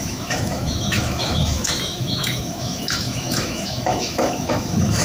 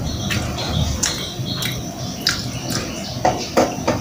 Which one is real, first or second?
second